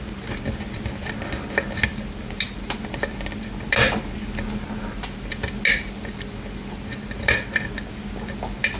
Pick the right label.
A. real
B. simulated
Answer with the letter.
A